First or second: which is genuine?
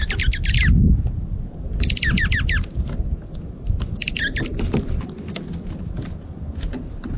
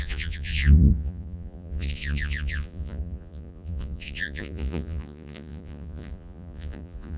first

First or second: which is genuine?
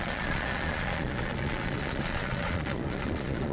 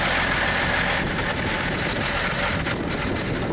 second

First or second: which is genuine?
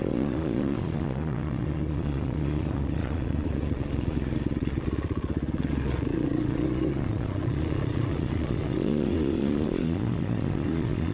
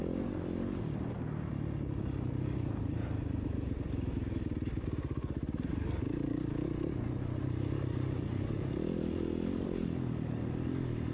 second